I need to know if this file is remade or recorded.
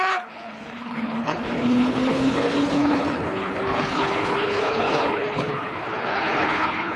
remade